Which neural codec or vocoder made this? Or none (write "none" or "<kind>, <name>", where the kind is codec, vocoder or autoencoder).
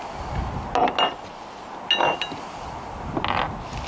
none